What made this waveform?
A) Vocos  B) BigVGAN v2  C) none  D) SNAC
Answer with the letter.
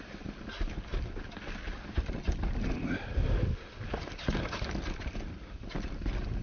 C